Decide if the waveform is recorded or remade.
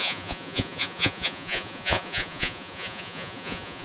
remade